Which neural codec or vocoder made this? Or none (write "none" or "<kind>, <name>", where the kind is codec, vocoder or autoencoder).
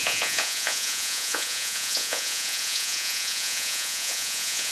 vocoder, Vocos